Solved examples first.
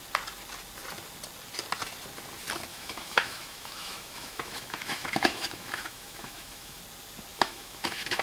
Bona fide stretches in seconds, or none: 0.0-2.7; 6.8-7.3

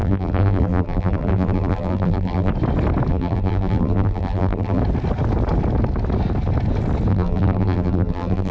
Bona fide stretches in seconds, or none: 2.5-3.1; 4.8-7.1

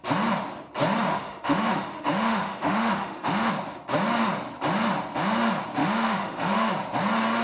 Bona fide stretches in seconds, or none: 0.0-1.1; 3.5-5.8; 6.7-7.4

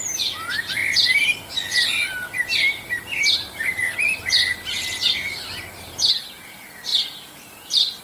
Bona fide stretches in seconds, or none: 0.0-6.9

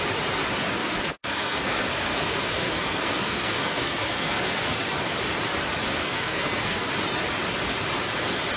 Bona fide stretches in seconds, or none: 0.0-0.8; 5.0-6.0; 6.8-8.6

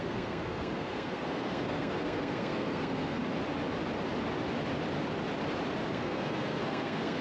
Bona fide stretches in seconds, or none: 3.2-5.9

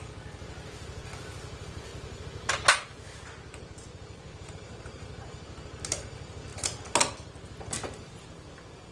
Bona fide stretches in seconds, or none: 0.0-8.9

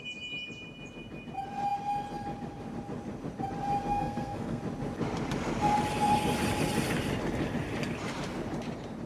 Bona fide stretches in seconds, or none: 0.0-3.9; 4.6-9.1